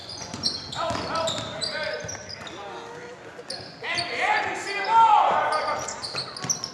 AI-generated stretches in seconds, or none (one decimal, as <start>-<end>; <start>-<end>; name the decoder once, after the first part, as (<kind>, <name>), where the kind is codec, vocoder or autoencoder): 0.0-0.9 (vocoder, Vocos)